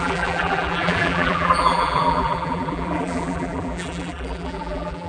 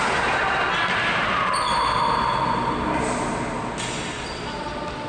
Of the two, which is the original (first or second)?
second